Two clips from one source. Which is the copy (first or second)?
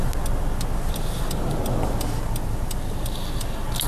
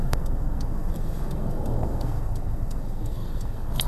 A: second